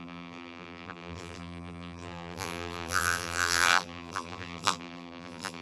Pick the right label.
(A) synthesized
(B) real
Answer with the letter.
A